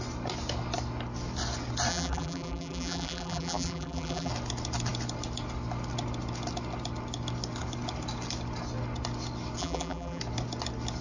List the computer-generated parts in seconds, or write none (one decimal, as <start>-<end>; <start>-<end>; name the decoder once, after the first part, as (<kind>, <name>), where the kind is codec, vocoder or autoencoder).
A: 1.9-4.3 (vocoder, BigVGAN v2); 9.6-10.2

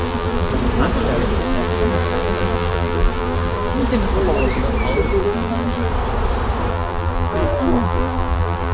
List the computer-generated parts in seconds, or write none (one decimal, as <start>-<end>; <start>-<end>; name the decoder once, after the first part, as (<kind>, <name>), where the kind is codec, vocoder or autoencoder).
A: 0.0-0.5 (vocoder, BigVGAN v2); 1.4-3.8; 5.2-5.9; 6.7-8.7

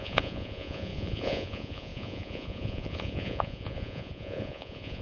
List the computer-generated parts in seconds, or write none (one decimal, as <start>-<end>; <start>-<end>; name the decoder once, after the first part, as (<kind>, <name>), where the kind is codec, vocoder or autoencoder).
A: 0.0-5.0 (vocoder, Vocos)

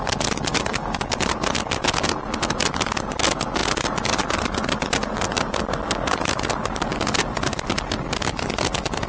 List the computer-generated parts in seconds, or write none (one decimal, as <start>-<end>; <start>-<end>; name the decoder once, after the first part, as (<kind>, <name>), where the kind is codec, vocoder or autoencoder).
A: none

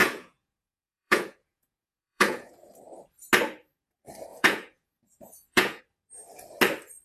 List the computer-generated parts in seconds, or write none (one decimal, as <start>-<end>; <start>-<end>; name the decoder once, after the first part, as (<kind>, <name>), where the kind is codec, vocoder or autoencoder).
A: 0.0-2.7 (vocoder, Vocos); 4.3-5.8

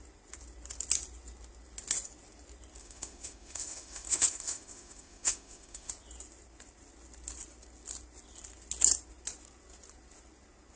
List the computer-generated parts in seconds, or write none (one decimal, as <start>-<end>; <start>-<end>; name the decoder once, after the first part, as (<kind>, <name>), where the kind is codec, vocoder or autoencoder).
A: 2.8-5.9 (autoencoder, DAC-VAE)